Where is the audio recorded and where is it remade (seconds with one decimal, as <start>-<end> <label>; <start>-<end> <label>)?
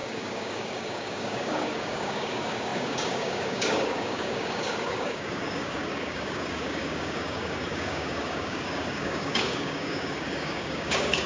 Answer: 0.0-11.3 remade